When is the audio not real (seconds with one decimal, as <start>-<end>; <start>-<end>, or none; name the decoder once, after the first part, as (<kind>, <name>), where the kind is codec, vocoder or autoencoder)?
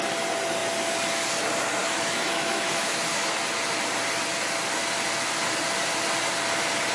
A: 1.8-3.4 (autoencoder, DAC-VAE)